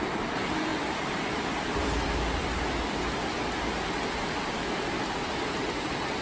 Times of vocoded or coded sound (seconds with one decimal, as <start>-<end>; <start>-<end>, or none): 0.7-3.1